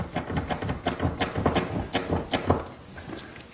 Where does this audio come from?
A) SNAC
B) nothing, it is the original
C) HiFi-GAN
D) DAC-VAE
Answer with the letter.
B